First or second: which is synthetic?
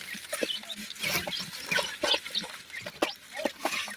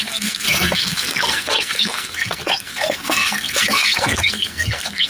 second